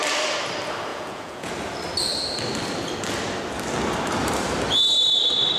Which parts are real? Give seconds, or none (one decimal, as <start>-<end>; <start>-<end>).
0.0-0.9; 1.5-5.6